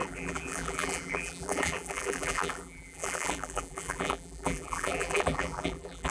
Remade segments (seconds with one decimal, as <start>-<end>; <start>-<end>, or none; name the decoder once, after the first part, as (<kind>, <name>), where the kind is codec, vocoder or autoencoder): 0.0-6.1 (vocoder, BigVGAN v2)